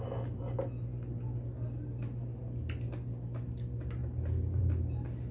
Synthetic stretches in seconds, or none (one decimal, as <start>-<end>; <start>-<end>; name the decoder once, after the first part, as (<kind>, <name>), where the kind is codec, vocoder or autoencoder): none